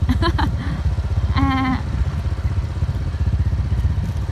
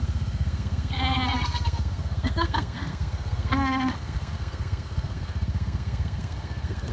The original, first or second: first